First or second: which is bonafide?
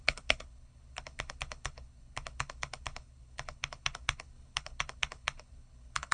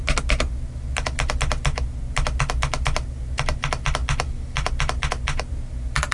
second